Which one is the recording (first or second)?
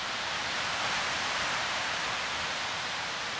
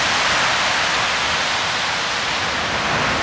second